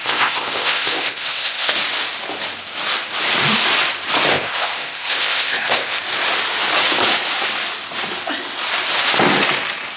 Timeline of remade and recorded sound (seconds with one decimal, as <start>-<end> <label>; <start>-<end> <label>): 0.0-1.7 remade; 1.7-4.3 recorded; 4.3-6.0 remade; 6.0-10.0 recorded